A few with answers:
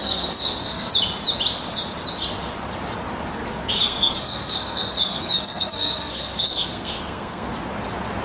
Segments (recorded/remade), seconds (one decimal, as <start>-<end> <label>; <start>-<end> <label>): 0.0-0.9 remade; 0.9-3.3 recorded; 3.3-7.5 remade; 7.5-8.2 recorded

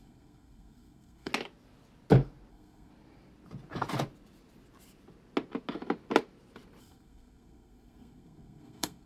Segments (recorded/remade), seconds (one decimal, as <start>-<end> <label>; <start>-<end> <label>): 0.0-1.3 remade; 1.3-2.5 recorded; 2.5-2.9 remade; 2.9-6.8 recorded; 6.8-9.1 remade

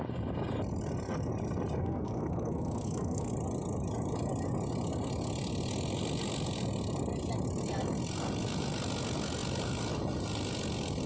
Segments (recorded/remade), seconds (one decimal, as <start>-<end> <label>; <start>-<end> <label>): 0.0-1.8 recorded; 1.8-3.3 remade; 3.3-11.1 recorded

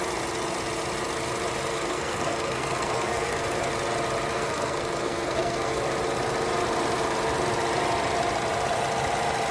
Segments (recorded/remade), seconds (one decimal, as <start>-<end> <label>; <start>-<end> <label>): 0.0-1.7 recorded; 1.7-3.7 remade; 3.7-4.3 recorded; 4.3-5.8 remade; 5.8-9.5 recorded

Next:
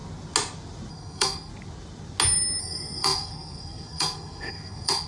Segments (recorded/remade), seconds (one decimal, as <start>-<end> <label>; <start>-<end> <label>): 0.0-0.9 recorded; 0.9-1.5 remade; 1.5-2.6 recorded; 2.6-5.1 remade

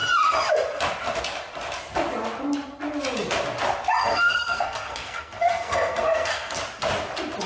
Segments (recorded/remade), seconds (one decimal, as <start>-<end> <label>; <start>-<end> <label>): 0.0-4.0 recorded; 4.0-6.6 remade; 6.6-7.5 recorded

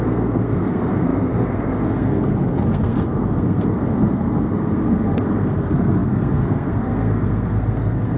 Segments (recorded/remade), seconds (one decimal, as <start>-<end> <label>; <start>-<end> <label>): 0.0-8.2 remade

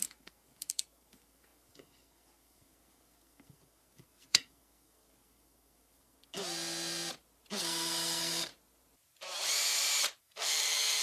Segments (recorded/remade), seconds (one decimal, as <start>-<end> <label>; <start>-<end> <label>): 0.0-6.4 remade; 6.4-7.5 recorded; 7.5-8.5 remade; 8.5-10.2 recorded; 10.2-11.0 remade